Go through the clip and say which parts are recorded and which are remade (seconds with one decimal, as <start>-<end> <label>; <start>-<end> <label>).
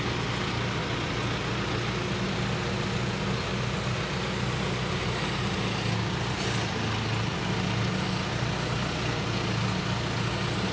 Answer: 0.0-10.7 recorded